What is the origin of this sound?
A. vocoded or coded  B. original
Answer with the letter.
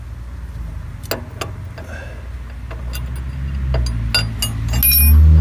B